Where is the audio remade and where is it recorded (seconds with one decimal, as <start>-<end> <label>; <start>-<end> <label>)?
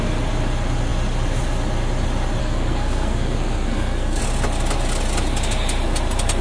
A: 0.0-2.4 recorded; 2.4-4.2 remade; 4.2-6.4 recorded